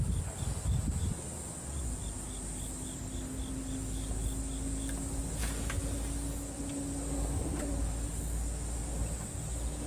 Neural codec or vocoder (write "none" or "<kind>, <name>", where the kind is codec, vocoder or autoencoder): none